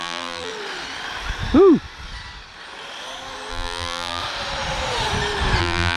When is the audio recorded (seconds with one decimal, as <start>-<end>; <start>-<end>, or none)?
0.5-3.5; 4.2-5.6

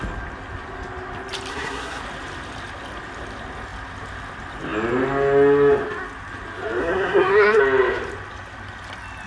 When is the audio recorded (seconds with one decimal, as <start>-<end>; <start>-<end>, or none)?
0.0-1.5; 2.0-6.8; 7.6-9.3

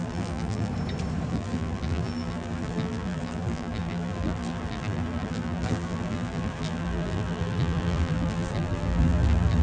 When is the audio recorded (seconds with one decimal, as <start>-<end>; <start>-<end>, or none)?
0.7-1.3